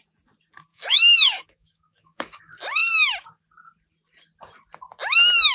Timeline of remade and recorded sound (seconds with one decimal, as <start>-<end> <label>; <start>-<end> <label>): 0.0-0.7 recorded; 0.7-2.4 remade; 2.4-5.5 recorded